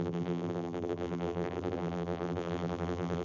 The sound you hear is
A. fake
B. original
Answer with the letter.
A